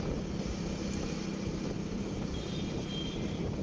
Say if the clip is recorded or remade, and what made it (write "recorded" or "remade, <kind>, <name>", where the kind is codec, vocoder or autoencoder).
recorded